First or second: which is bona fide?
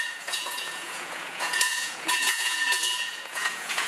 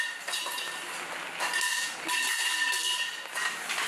second